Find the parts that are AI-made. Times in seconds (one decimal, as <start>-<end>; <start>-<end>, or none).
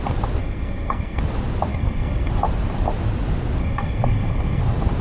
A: 0.4-1.2; 1.7-2.3; 3.6-4.6